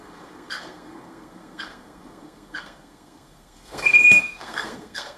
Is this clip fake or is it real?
fake